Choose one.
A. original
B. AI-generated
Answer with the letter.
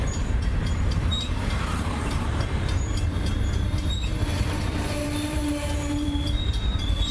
B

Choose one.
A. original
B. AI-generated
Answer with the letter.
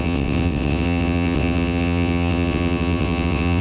B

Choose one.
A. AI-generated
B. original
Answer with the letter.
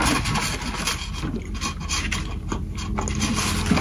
B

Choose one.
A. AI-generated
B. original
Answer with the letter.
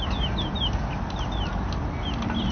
B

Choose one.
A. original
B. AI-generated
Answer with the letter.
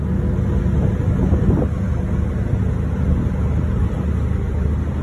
A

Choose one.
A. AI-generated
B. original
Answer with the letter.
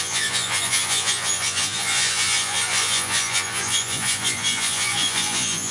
A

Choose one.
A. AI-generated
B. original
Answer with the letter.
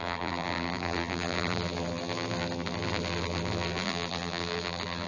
A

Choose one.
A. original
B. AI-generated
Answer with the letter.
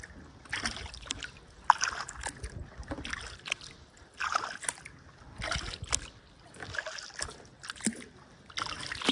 A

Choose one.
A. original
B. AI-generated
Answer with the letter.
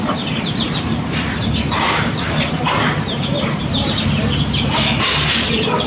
B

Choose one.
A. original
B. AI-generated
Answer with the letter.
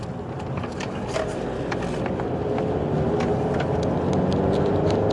A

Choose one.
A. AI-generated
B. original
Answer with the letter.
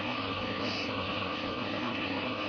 A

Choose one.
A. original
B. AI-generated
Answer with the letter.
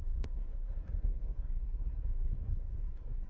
B